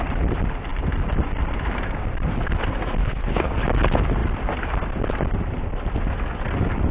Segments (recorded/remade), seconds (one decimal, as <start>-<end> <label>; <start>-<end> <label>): 0.0-3.0 recorded; 3.0-3.5 remade; 3.5-6.9 recorded